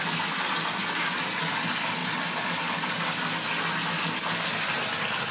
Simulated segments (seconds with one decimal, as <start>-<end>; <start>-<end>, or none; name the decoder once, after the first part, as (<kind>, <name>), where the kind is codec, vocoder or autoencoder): none